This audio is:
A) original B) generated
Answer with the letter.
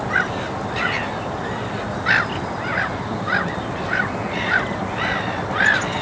A